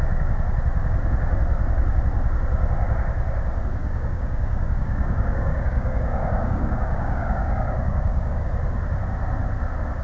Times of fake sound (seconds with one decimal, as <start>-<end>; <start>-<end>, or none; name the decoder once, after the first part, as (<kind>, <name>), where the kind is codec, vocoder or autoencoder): 3.8-8.5 (codec, DAC)

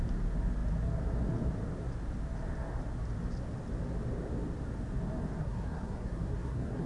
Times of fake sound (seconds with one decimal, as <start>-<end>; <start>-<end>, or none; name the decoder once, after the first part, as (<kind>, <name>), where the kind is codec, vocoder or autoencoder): 5.4-6.9 (codec, SNAC)

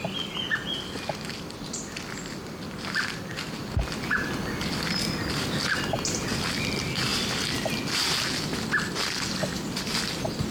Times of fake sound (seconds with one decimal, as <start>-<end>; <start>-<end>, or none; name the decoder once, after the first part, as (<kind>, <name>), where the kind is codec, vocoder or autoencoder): none

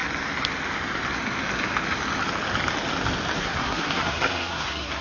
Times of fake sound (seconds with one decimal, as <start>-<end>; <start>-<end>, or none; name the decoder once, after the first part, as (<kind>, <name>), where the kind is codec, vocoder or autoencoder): 3.4-5.0 (codec, SNAC)

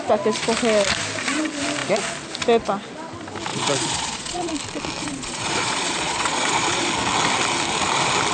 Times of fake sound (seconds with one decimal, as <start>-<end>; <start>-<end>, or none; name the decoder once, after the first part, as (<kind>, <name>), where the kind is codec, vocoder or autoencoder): 3.5-4.5 (vocoder, Vocos); 5.0-6.9

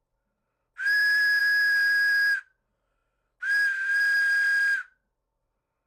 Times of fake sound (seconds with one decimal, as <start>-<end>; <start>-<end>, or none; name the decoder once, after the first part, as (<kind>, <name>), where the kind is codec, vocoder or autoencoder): none

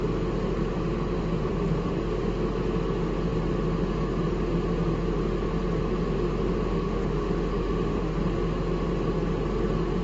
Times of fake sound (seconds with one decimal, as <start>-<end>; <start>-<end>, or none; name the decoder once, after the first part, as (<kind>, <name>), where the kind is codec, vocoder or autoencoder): 1.5-2.0 (autoencoder, DAC-VAE); 6.7-8.2

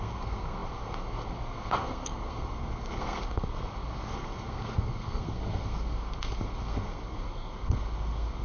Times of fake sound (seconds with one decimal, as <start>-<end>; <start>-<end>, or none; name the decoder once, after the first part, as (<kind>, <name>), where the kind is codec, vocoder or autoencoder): 0.0-8.4 (codec, SNAC)